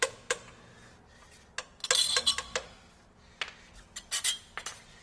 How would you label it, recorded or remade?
recorded